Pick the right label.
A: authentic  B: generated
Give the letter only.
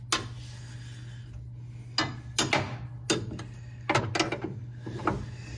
A